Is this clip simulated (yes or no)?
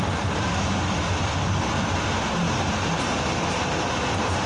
no